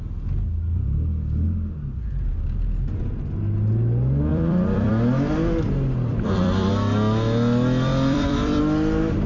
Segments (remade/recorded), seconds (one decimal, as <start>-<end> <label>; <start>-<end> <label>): 0.0-4.3 recorded; 4.3-4.9 remade; 4.9-6.1 recorded; 6.1-6.7 remade; 6.7-7.9 recorded; 7.9-8.6 remade; 8.6-9.3 recorded